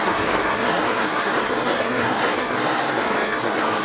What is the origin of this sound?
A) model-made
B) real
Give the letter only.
A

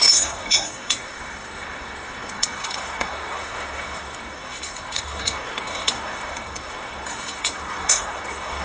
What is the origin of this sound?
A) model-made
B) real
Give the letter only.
A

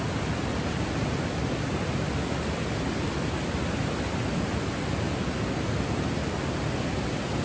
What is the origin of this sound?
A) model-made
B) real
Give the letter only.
B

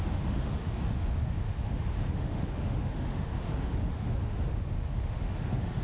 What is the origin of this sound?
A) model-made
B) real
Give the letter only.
A